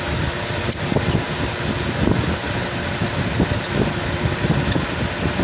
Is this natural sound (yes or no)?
yes